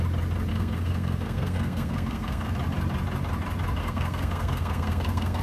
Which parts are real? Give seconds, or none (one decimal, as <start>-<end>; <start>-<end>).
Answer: 0.0-0.5; 2.5-3.8